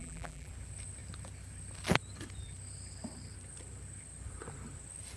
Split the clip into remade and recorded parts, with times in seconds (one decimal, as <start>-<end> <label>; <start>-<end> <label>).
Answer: 0.0-0.5 remade; 0.5-5.2 recorded